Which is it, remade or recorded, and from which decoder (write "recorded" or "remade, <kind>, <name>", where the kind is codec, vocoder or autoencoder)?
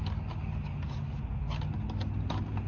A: recorded